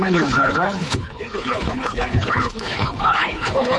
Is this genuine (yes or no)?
no